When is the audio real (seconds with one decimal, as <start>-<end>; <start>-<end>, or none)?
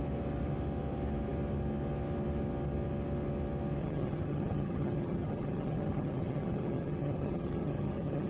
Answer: 0.0-3.8